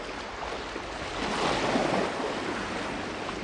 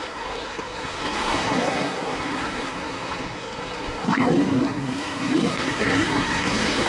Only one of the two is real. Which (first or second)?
first